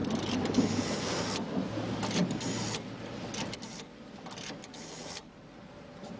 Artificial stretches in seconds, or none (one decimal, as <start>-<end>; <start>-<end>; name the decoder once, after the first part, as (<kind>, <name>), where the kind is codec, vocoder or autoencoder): 0.0-0.8 (vocoder, BigVGAN v2); 2.2-3.8; 5.0-5.6